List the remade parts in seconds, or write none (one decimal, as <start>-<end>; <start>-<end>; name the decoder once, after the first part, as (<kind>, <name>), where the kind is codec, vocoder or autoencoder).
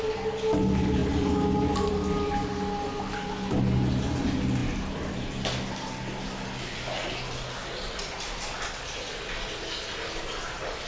none